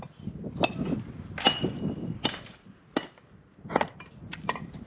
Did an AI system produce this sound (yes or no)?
no